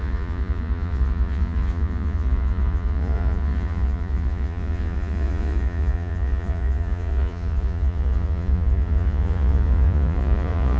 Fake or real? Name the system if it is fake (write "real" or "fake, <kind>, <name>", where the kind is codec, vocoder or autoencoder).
fake, vocoder, Vocos